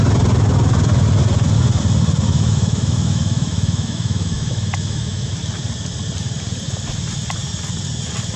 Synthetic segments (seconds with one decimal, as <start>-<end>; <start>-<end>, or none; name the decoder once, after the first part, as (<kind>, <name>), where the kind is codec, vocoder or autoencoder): 2.3-5.3 (autoencoder, DAC-VAE)